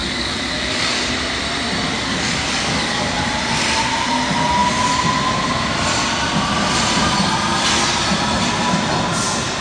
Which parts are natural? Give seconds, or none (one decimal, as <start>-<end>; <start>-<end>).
0.9-1.9; 3.2-9.6